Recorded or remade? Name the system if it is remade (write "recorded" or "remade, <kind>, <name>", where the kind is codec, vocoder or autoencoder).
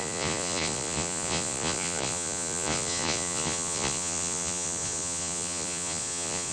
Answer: remade, vocoder, Vocos